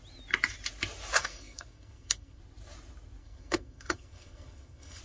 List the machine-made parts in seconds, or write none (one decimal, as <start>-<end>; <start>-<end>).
1.2-2.4; 3.2-5.0